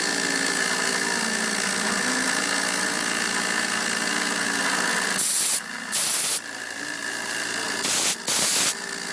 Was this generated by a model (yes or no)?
no